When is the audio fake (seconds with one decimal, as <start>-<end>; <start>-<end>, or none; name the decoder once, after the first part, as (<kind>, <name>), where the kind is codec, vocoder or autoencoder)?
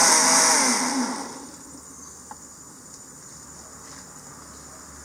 none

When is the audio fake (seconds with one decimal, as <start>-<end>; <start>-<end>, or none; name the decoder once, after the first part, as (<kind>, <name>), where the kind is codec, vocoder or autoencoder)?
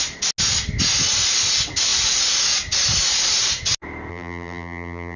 4.1-5.2 (vocoder, BigVGAN v2)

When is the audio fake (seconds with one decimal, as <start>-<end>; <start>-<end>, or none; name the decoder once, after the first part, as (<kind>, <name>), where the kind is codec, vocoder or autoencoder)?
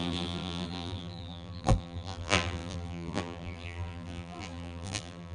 0.0-5.3 (vocoder, BigVGAN v2)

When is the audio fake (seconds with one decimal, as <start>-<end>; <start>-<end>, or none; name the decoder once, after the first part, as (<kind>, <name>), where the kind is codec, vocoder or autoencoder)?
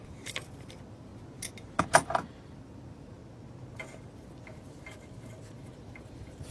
0.0-1.1 (vocoder, BigVGAN v2); 1.8-3.2; 4.1-4.5; 5.8-6.5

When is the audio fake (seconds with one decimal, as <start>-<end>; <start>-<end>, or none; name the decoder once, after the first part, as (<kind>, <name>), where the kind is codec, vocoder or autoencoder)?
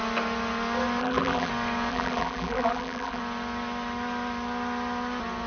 1.0-1.5 (vocoder, BigVGAN v2); 1.9-3.2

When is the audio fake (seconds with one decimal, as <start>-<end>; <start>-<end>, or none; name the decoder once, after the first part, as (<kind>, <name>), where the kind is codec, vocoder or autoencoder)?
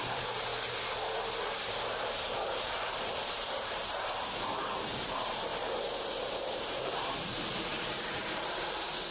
0.0-0.5 (vocoder, BigVGAN v2); 3.0-5.5; 6.3-9.1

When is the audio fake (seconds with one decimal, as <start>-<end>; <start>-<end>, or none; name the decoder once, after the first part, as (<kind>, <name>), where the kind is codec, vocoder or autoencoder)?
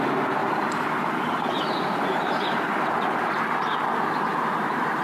0.4-3.4 (vocoder, BigVGAN v2); 4.3-5.0